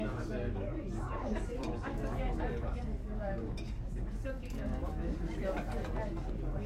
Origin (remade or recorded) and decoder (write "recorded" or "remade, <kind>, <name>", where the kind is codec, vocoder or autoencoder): remade, codec, DAC